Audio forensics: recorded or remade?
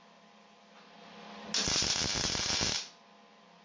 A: recorded